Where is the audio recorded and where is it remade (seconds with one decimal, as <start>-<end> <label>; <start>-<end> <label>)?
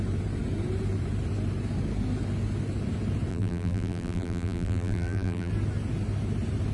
0.0-3.3 recorded; 3.3-5.5 remade; 5.5-6.7 recorded